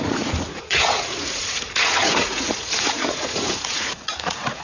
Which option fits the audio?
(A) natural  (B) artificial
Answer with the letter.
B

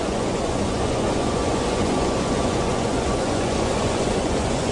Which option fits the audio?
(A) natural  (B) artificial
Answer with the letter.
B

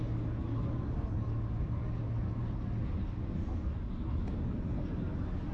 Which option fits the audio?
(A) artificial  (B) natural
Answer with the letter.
B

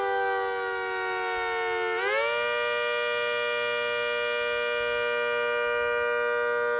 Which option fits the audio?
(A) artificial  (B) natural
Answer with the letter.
B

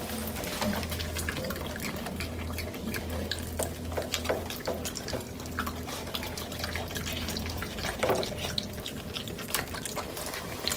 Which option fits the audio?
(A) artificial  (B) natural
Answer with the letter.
B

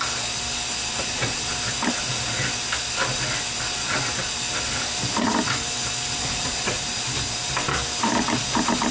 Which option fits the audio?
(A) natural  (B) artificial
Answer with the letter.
A